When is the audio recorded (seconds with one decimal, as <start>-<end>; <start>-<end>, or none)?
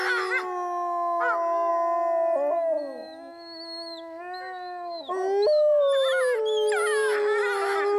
0.0-8.0